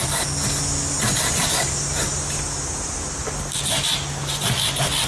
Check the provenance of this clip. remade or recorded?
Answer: recorded